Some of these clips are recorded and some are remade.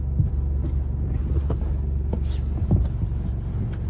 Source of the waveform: recorded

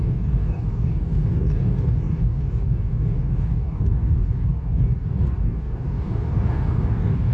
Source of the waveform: remade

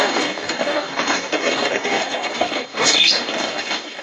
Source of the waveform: remade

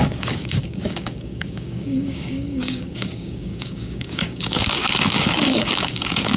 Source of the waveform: remade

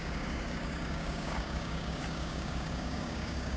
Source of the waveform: remade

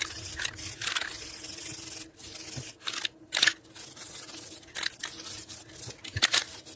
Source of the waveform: recorded